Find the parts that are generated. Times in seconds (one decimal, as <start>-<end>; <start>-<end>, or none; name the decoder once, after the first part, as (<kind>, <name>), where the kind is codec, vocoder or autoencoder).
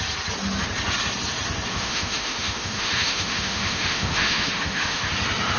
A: 1.7-5.1 (autoencoder, DAC-VAE)